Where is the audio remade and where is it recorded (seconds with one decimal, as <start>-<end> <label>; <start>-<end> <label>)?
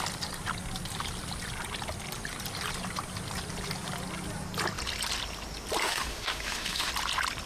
0.0-5.8 recorded; 5.8-6.9 remade; 6.9-7.5 recorded